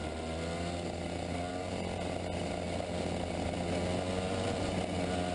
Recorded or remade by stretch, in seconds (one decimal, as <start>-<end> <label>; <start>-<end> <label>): 0.0-5.3 recorded